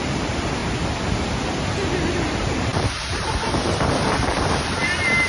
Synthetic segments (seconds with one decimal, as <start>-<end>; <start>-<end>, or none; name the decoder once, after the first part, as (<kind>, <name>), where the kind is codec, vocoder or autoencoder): 0.0-0.6 (vocoder, BigVGAN v2); 2.1-5.3